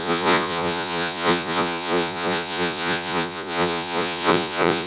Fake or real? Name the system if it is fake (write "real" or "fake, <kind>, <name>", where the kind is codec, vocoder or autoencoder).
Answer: fake, vocoder, Vocos